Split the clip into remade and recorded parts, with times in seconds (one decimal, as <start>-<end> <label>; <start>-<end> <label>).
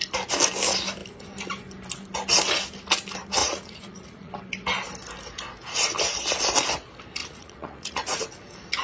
0.0-3.4 recorded; 3.4-4.3 remade; 4.3-7.2 recorded; 7.2-8.2 remade; 8.2-8.8 recorded